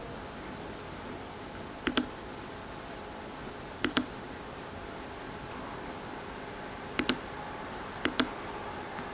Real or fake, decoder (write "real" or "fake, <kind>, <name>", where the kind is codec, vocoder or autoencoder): real